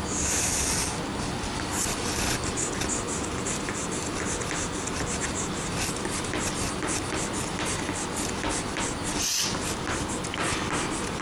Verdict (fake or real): real